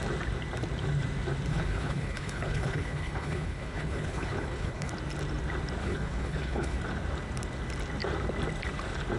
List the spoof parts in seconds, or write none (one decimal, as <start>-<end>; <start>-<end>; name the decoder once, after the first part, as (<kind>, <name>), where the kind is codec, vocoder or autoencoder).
1.5-4.9 (codec, HILCodec); 5.8-6.8